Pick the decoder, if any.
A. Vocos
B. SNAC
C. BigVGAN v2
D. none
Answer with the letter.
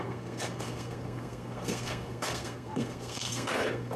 B